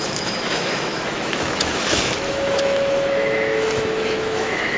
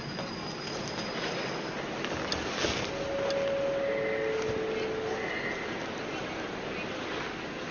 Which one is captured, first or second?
second